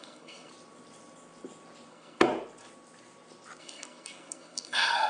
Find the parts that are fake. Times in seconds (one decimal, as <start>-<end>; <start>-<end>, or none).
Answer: 0.0-0.5; 1.9-2.3; 3.6-5.1

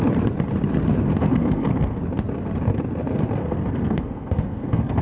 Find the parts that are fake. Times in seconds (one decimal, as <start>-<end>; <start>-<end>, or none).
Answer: 1.2-2.0; 3.4-5.0

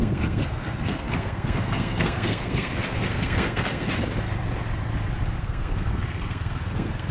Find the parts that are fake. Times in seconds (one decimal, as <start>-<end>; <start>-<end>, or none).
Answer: 0.0-3.9; 5.4-7.1

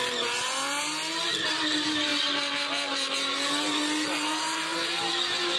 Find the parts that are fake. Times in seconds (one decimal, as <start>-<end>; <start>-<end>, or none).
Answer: none

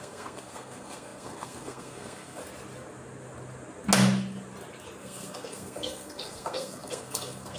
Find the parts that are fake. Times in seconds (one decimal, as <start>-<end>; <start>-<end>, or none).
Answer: 0.0-2.4; 5.0-7.6

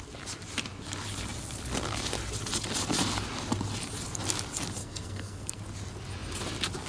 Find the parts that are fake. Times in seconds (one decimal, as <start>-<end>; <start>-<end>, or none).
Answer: 4.8-5.6